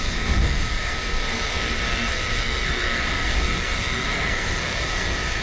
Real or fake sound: fake